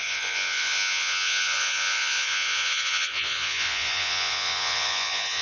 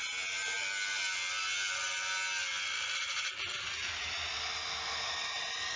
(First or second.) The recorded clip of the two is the second